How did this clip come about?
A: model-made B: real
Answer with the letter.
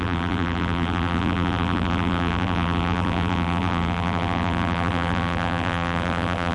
A